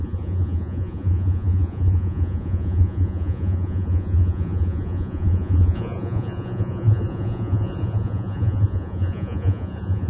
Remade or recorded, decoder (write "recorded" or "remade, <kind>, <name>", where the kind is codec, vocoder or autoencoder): remade, vocoder, Vocos